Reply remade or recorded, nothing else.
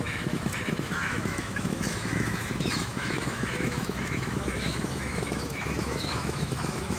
remade